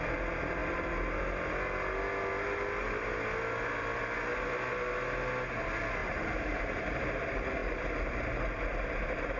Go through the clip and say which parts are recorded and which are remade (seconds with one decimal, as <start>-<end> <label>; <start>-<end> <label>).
0.0-0.6 recorded; 0.6-1.2 remade; 1.2-6.0 recorded; 6.0-6.6 remade; 6.6-9.4 recorded